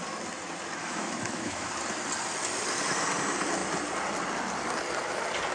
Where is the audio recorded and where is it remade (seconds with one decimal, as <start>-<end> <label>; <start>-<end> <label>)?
0.0-0.8 recorded; 0.8-1.7 remade; 1.7-5.5 recorded